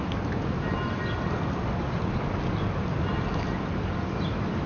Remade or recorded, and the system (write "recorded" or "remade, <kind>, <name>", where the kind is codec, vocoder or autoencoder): recorded